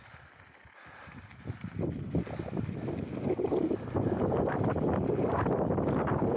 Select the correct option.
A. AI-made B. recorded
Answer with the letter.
B